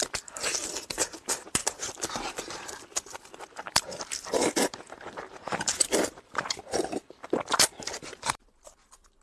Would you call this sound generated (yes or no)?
yes